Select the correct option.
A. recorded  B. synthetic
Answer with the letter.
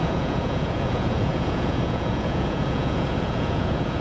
B